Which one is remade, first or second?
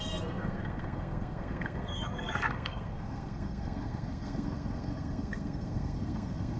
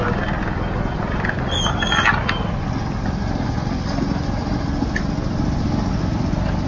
first